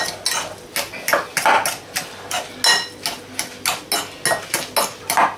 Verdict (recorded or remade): recorded